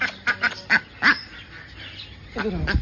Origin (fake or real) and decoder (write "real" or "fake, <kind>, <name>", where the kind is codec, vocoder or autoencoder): real